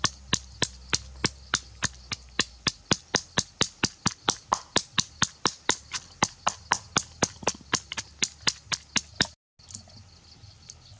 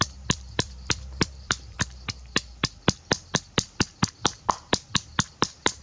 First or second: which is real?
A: first